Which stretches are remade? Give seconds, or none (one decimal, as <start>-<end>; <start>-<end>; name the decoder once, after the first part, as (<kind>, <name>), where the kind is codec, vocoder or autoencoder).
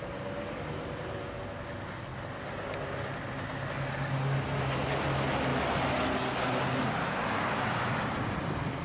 5.5-6.2 (vocoder, BigVGAN v2)